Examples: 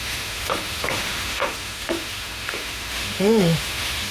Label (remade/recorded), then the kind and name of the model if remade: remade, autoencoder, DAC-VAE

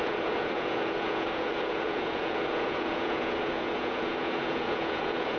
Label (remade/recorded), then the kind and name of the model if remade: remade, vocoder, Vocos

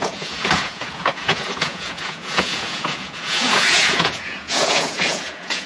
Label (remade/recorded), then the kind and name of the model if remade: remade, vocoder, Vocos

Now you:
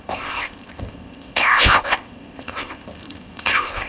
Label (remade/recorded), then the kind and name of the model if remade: remade, codec, ZipCodec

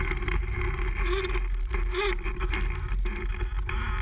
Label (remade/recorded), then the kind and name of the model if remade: recorded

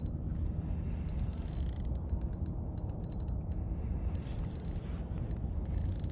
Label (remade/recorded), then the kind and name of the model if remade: recorded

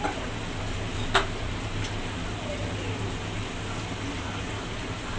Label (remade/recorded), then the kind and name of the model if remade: recorded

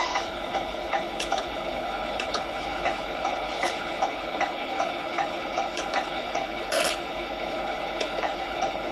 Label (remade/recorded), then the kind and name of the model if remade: remade, codec, HILCodec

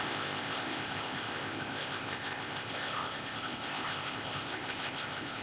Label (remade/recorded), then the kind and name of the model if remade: remade, codec, ZipCodec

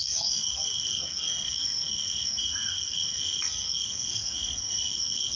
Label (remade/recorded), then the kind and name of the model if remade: remade, codec, SNAC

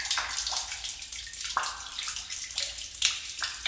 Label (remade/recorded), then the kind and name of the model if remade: recorded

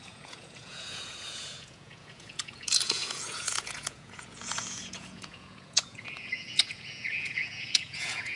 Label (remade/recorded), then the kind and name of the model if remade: remade, vocoder, Vocos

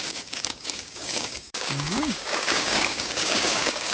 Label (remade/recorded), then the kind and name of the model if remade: remade, codec, DAC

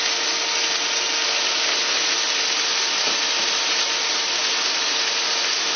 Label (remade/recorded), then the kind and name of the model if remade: recorded